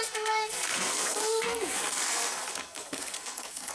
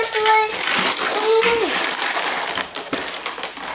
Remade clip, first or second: first